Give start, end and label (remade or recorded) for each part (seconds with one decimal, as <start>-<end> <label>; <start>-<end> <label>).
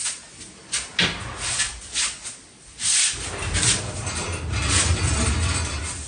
0.0-6.1 recorded